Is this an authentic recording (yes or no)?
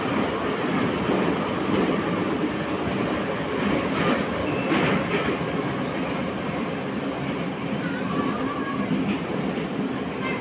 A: yes